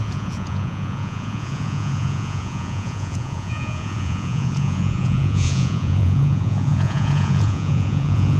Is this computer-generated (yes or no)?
yes